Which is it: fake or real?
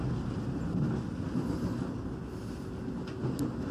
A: real